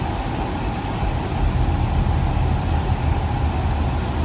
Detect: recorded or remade recorded